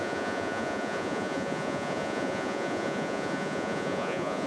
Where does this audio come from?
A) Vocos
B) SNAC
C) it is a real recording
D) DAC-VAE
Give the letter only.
A